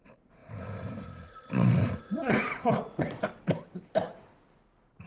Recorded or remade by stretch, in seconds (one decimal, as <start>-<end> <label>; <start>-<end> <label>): 0.0-3.3 remade; 3.3-5.1 recorded